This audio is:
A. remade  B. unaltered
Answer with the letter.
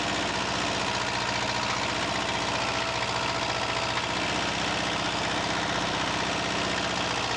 B